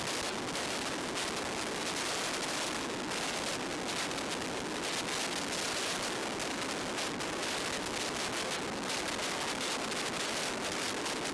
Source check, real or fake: real